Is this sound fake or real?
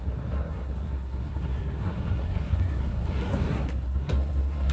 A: fake